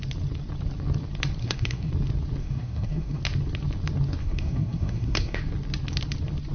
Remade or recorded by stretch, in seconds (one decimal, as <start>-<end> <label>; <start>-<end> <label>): 0.0-1.4 recorded; 1.4-1.9 remade; 1.9-2.4 recorded; 2.4-3.2 remade; 3.2-4.2 recorded; 4.2-5.4 remade; 5.4-6.5 recorded